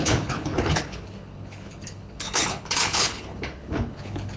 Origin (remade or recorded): remade